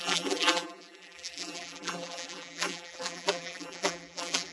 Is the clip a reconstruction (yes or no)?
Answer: yes